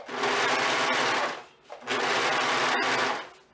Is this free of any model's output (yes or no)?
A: yes